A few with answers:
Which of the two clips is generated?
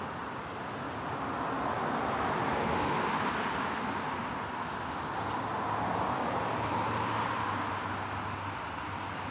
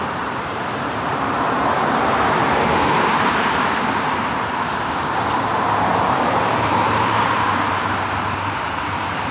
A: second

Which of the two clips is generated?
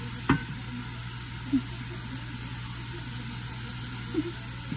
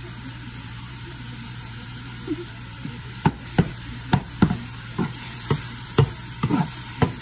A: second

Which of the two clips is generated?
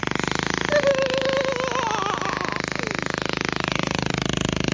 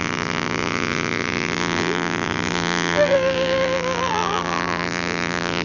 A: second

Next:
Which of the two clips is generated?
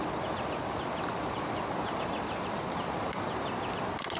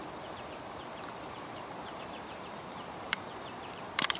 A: second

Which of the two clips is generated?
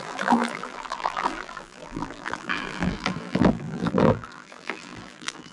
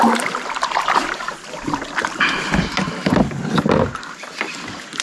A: first